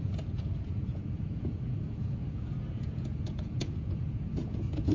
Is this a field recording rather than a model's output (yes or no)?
no